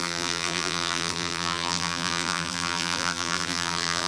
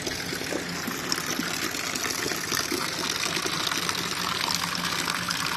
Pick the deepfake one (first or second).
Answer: first